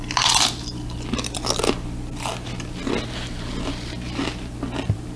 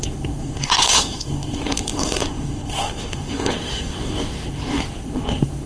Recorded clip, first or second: first